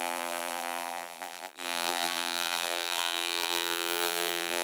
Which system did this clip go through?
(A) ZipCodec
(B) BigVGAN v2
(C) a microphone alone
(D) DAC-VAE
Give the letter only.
B